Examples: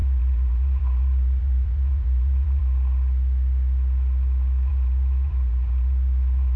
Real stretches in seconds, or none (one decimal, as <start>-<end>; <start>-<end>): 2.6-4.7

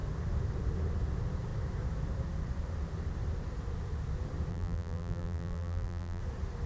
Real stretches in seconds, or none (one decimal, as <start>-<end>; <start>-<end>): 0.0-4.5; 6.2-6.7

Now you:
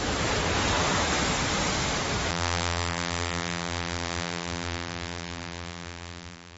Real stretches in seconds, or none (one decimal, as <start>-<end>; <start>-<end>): 0.0-2.3

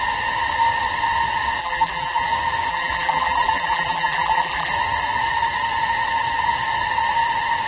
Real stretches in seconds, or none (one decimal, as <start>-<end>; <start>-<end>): 0.0-1.6; 2.2-2.7; 4.7-7.7

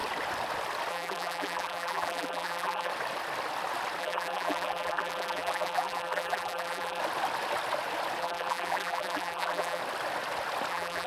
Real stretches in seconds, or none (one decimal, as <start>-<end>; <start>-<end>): 0.0-0.9; 2.9-4.0; 7.0-8.2; 9.8-10.7

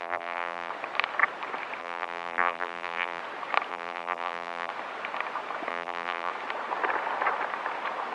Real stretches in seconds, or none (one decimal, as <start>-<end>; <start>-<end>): 0.7-1.8; 3.2-3.7; 4.7-5.7; 6.3-8.1

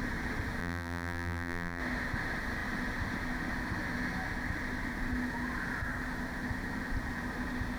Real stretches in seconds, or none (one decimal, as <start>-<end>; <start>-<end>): 0.0-0.6; 1.8-7.8